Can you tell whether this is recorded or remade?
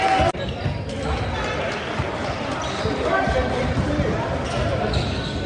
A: recorded